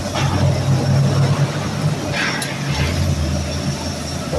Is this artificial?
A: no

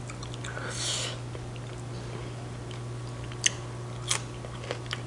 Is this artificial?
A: no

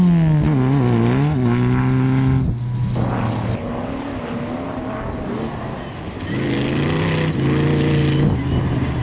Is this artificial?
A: no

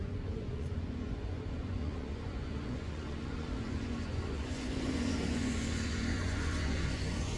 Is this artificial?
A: yes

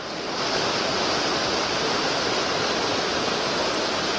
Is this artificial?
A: no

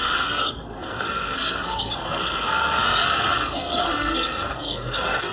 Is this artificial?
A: yes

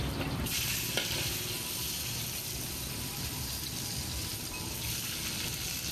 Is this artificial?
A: no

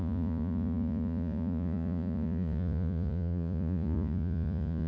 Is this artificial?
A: yes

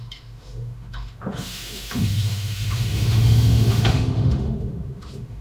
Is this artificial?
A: yes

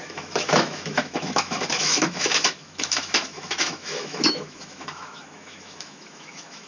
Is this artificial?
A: yes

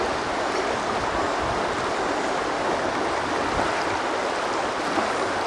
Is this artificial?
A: no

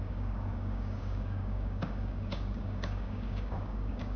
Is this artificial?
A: yes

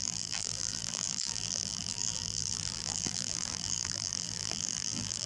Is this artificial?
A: yes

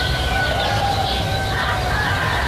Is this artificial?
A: no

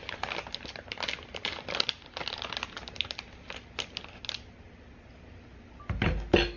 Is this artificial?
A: no